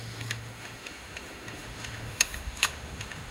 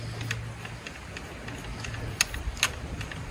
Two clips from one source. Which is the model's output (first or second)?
first